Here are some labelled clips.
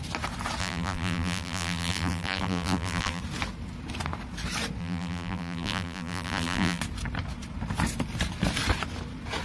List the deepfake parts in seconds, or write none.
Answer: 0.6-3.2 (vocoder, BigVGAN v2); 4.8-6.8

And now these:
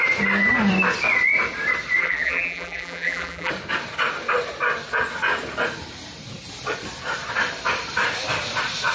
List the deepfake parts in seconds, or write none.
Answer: 2.0-3.5 (vocoder, BigVGAN v2)

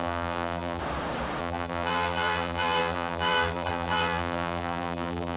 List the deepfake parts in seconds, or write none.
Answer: 0.0-0.8 (vocoder, BigVGAN v2); 1.4-5.4

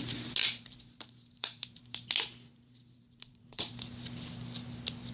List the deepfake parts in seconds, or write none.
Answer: 0.4-2.1 (vocoder, BigVGAN v2); 2.5-3.7

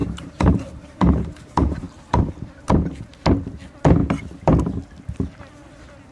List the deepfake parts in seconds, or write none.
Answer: 0.0-2.3 (vocoder, BigVGAN v2)